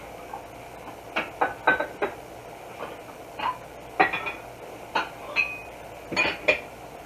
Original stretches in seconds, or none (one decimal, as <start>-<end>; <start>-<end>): 0.0-7.1